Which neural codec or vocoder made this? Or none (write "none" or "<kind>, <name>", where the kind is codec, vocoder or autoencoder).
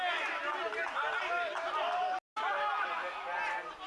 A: none